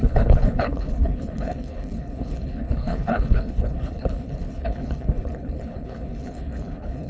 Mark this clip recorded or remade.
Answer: remade